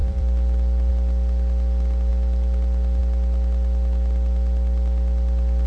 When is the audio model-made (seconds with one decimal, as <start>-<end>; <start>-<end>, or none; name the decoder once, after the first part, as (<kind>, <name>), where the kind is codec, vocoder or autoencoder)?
0.0-0.9 (vocoder, BigVGAN v2)